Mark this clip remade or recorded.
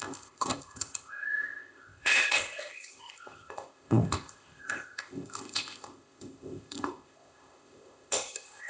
remade